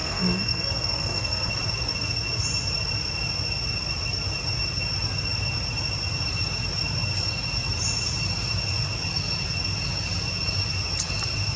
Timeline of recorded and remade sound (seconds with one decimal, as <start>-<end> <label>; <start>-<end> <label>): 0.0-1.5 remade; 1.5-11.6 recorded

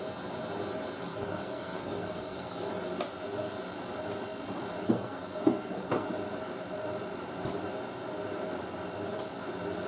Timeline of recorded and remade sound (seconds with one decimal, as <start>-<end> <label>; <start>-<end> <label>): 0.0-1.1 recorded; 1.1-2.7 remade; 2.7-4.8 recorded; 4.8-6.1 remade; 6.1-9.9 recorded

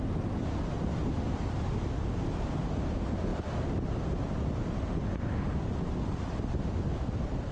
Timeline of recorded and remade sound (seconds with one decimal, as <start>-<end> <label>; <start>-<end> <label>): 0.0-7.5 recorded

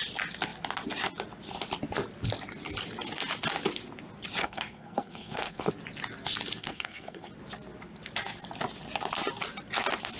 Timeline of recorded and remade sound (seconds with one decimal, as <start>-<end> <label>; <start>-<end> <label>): 0.0-4.4 recorded; 4.4-5.7 remade; 5.7-6.6 recorded; 6.6-7.3 remade; 7.3-10.2 recorded

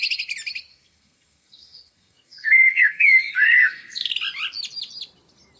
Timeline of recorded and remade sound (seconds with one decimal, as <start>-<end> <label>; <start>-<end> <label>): 0.0-0.7 recorded; 0.7-4.1 remade; 4.1-5.6 recorded

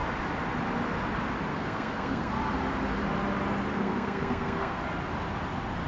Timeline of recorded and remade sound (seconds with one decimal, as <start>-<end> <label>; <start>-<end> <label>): 0.0-1.5 recorded; 1.5-2.3 remade; 2.3-3.7 recorded; 3.7-4.8 remade; 4.8-5.9 recorded